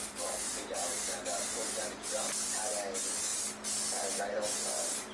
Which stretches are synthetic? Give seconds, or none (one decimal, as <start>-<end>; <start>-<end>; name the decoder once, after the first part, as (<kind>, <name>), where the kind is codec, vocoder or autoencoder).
none